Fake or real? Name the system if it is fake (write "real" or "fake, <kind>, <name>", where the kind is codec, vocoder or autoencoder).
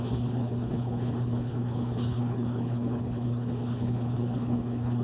fake, codec, HILCodec